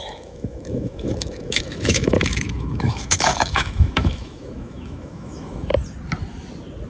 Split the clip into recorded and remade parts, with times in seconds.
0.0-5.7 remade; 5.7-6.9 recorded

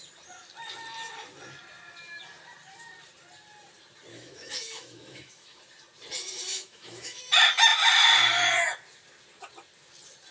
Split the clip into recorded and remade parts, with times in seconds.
0.0-4.1 recorded; 4.1-5.6 remade; 5.6-6.5 recorded; 6.5-7.2 remade; 7.2-10.3 recorded